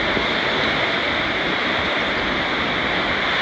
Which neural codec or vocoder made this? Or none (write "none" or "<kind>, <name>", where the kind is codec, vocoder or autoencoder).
none